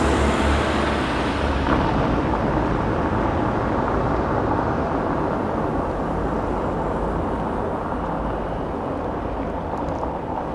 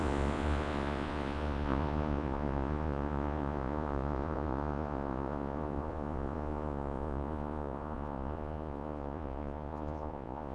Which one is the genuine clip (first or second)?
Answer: first